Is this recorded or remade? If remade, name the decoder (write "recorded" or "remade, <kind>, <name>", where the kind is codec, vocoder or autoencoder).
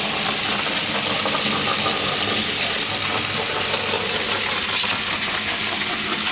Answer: recorded